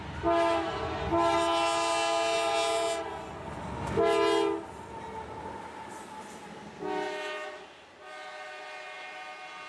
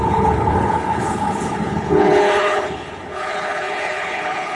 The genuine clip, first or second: first